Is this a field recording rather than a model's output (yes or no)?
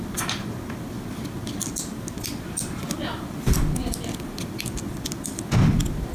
yes